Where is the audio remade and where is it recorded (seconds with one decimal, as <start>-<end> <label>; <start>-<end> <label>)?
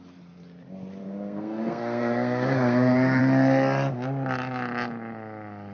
0.0-1.0 recorded; 1.0-3.2 remade; 3.2-5.7 recorded